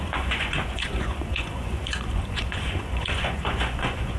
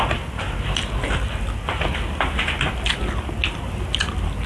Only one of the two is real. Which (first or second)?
second